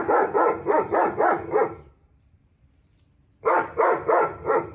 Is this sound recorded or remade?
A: recorded